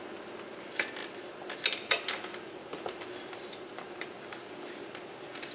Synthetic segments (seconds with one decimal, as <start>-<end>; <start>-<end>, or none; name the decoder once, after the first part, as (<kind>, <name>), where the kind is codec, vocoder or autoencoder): none

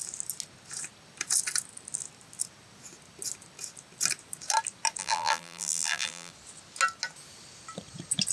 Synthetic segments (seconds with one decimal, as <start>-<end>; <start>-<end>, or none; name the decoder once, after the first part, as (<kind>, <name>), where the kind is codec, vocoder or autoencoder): 5.0-6.3 (vocoder, BigVGAN v2)

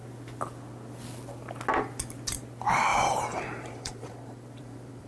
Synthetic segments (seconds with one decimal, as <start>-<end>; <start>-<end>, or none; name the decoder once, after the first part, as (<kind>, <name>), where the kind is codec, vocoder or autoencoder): 2.9-5.1 (vocoder, BigVGAN v2)

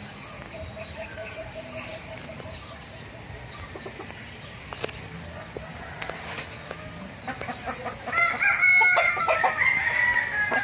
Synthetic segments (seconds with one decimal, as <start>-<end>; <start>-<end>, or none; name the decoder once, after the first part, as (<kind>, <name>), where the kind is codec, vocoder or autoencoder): none

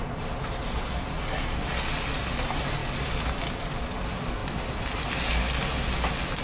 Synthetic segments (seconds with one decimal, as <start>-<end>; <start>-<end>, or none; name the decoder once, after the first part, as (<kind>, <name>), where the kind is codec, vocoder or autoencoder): 2.8-3.6 (vocoder, BigVGAN v2)

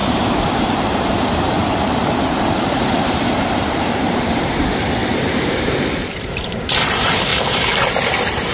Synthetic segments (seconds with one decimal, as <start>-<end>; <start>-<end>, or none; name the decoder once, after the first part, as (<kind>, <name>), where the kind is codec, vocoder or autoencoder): 0.0-7.3 (vocoder, BigVGAN v2); 8.1-8.5

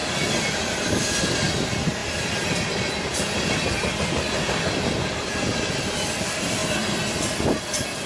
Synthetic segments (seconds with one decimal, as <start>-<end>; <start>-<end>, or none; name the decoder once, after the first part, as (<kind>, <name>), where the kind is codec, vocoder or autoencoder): 2.0-2.9 (vocoder, BigVGAN v2)

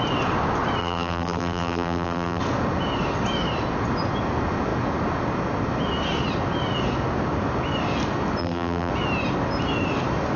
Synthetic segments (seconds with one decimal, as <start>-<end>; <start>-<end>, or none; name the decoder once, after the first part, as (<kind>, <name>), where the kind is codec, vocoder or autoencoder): 0.8-2.4 (vocoder, BigVGAN v2); 8.4-8.9